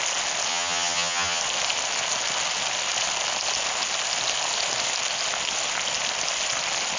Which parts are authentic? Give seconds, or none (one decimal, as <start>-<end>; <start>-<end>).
0.0-0.5; 1.4-7.0

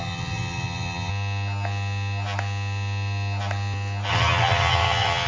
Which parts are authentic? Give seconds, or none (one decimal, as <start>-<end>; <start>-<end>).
1.1-4.1